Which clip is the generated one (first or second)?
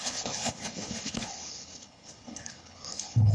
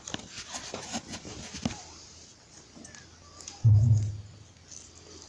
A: first